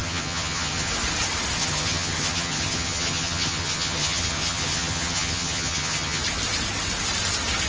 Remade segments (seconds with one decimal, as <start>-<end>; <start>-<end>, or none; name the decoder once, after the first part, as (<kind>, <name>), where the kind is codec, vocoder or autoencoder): 0.0-0.9 (vocoder, HiFi-GAN); 1.6-6.2